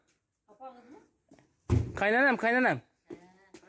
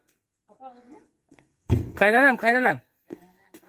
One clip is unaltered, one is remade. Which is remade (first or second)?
second